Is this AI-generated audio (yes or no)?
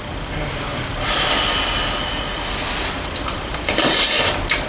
no